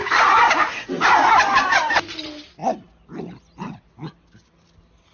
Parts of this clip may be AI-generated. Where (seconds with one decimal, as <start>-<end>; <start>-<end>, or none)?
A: none